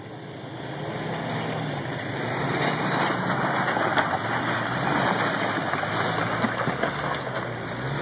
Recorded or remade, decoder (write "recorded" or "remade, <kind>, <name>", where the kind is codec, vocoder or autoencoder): recorded